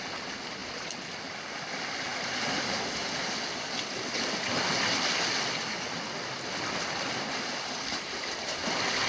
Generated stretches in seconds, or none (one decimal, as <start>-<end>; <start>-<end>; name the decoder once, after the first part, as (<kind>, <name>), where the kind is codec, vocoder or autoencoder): none